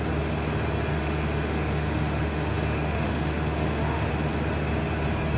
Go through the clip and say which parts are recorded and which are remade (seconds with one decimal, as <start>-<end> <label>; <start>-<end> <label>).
0.0-0.9 recorded; 0.9-4.1 remade; 4.1-5.4 recorded

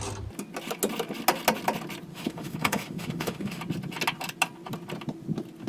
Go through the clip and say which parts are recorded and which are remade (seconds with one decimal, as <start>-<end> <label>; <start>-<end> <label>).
0.0-2.1 recorded; 2.1-3.6 remade; 3.6-5.7 recorded

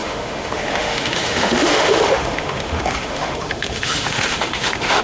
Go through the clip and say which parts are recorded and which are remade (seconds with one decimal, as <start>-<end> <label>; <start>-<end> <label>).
0.0-5.0 remade

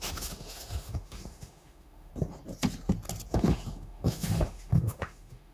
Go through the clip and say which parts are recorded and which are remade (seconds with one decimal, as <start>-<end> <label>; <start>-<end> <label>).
0.0-2.1 remade; 2.1-3.3 recorded; 3.3-5.5 remade

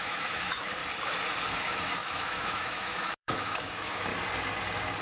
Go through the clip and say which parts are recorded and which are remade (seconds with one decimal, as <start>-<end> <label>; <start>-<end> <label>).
0.0-0.8 remade; 0.8-1.5 recorded; 1.5-4.1 remade; 4.1-5.0 recorded